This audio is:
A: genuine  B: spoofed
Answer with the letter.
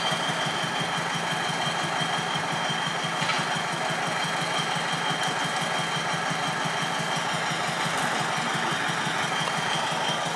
A